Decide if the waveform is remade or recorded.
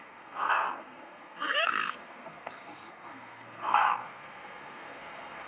remade